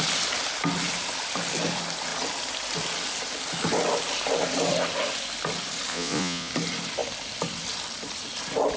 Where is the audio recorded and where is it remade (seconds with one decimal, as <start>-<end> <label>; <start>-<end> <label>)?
0.0-5.9 recorded; 5.9-6.5 remade; 6.5-8.8 recorded